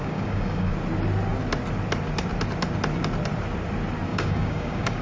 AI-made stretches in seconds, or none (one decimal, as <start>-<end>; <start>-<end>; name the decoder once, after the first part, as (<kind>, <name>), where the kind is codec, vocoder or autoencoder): 0.0-0.7 (codec, DAC); 4.1-5.0